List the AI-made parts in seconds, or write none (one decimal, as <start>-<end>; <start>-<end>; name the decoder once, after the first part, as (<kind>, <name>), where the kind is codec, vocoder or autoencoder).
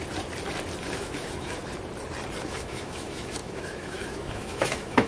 0.8-1.6 (autoencoder, DAC-VAE); 2.4-5.1